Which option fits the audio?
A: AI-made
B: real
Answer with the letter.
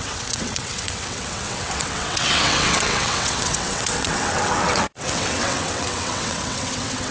A